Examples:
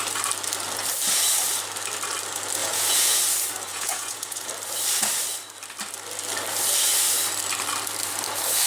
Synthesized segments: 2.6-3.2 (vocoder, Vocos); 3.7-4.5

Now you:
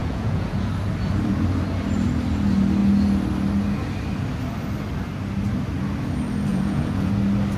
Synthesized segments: 0.0-0.7 (vocoder, Vocos); 6.5-7.1

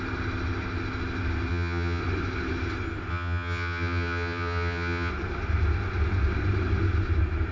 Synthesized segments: 1.5-2.0 (vocoder, HiFi-GAN); 3.1-5.1

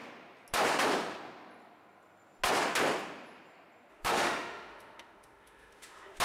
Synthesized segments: 3.9-6.2 (autoencoder, DAC-VAE)

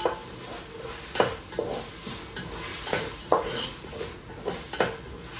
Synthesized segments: 2.7-4.3 (vocoder, Vocos)

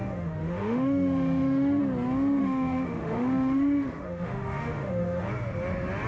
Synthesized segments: 0.0-1.8 (autoencoder, DAC-VAE); 2.4-5.3